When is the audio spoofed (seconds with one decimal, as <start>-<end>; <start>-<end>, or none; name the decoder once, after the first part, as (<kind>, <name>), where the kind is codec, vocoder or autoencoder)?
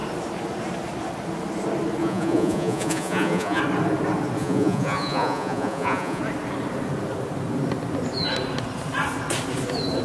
2.0-3.6 (vocoder, Vocos); 4.4-6.2